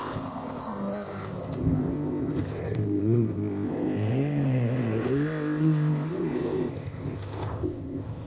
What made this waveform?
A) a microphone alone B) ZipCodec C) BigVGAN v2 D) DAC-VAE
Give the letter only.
B